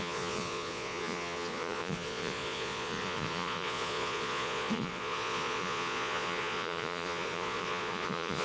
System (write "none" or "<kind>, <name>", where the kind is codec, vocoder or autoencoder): vocoder, Vocos